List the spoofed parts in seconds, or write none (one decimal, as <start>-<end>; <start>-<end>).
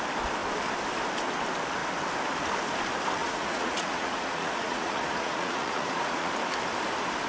3.2-6.3